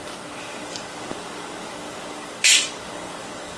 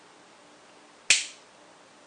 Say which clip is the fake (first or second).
first